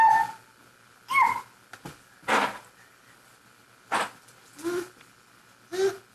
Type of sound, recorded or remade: recorded